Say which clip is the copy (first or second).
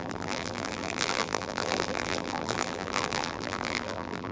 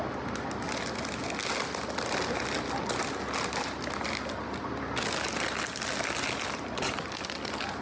first